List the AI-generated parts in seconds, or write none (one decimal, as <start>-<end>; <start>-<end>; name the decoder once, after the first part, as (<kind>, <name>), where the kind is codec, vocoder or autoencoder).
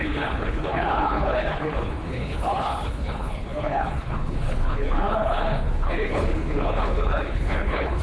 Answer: 0.0-8.0 (codec, HILCodec)